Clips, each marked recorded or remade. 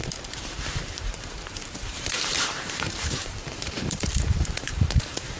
remade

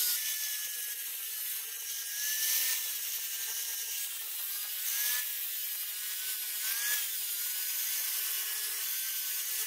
recorded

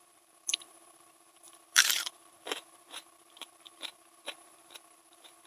remade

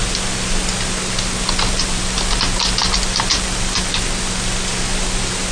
recorded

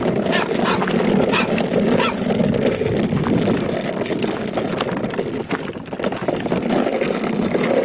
recorded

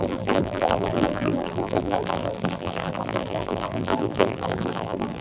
remade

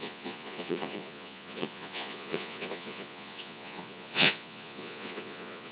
remade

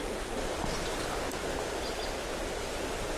recorded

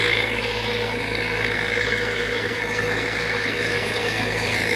remade